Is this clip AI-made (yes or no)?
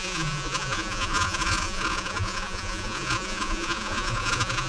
yes